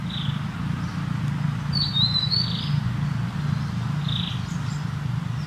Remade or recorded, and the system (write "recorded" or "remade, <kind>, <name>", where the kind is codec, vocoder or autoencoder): recorded